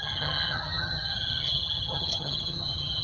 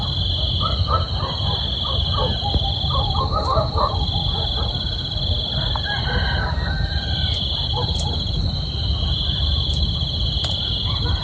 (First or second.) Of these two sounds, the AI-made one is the first